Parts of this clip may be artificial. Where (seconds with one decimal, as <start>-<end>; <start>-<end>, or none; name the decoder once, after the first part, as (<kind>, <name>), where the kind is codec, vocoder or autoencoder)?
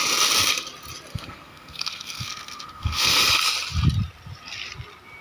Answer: 1.1-3.3 (codec, SNAC)